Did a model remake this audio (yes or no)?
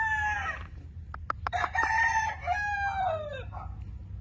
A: no